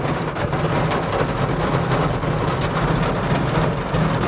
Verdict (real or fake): real